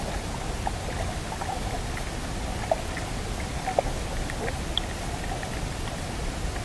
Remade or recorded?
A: recorded